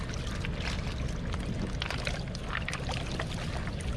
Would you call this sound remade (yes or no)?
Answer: no